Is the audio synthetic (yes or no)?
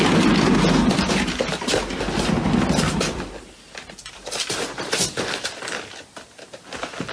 no